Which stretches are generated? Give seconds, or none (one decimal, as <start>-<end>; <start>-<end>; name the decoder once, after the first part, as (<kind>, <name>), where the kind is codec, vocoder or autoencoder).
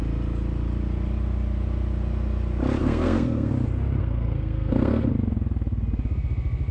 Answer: 2.8-3.5 (codec, SNAC); 4.0-5.1